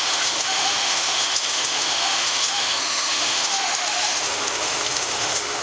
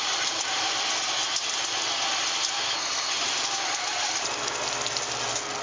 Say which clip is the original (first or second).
second